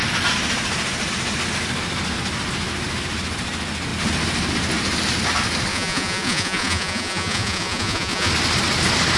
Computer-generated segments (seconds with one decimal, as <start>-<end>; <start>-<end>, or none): 5.7-8.3